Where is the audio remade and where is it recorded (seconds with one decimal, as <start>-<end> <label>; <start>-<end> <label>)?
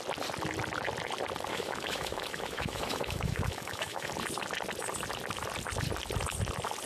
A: 0.0-1.5 recorded; 1.5-4.1 remade; 4.1-6.8 recorded